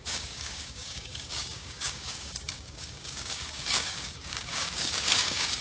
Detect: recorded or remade remade